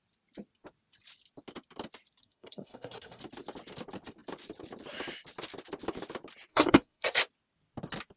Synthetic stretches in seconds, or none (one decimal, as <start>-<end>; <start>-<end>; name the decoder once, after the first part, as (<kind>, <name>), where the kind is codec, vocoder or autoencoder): 2.2-3.2 (codec, SNAC); 6.5-7.2